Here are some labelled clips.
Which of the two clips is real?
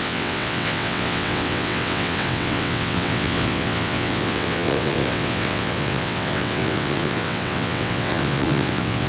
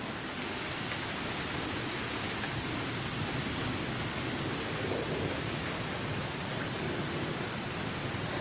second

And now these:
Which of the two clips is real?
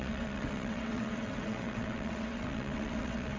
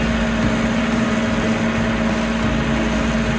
second